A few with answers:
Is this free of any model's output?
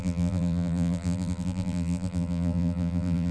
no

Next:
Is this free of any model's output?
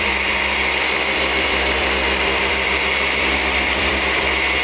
no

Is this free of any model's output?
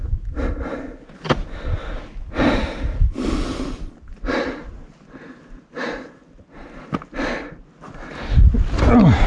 yes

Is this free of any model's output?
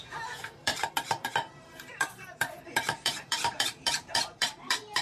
no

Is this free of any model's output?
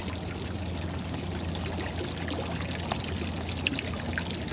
yes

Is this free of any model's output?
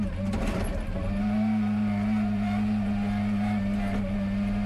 yes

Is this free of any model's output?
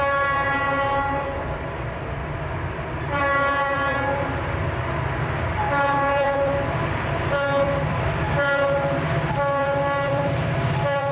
no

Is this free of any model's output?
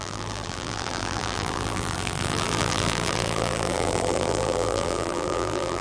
no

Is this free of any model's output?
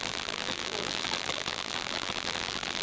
no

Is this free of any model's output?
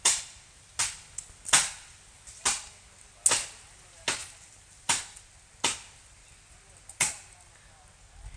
yes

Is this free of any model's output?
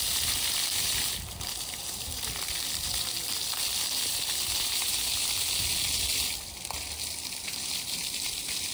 no